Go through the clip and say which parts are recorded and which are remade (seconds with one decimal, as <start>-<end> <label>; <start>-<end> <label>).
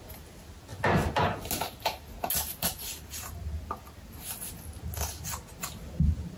0.0-2.6 recorded; 2.6-4.4 remade; 4.4-6.4 recorded